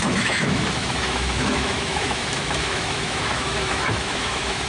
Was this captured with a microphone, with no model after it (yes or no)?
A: no